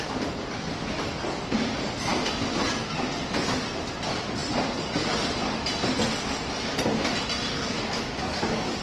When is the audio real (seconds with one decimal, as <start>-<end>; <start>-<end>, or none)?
0.0-7.5